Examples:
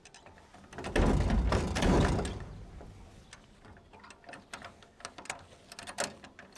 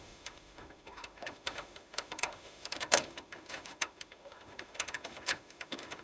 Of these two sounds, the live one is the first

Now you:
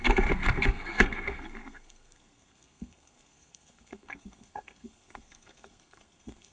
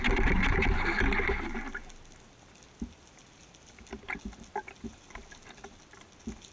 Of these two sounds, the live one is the second